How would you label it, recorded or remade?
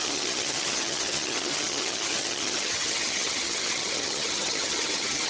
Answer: remade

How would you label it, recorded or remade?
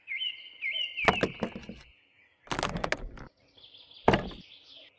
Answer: recorded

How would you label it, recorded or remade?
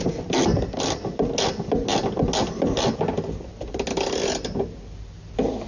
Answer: recorded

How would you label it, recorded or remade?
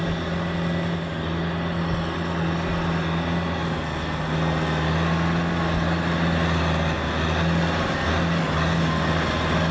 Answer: recorded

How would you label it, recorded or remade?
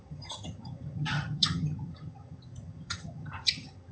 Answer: remade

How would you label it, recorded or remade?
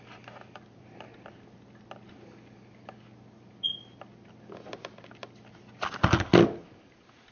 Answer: recorded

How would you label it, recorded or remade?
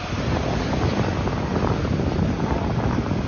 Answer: recorded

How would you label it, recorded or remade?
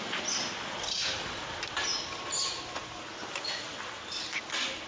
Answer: recorded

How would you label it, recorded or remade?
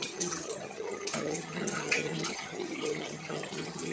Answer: remade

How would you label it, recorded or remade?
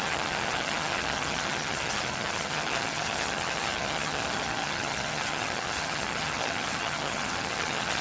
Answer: remade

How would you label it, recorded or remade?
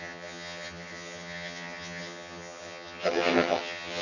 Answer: remade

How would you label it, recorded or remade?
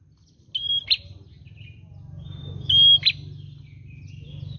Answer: recorded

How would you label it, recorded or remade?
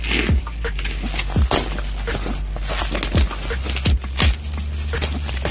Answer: recorded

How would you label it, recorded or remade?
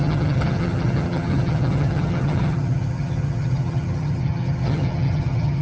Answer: remade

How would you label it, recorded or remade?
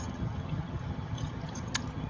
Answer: remade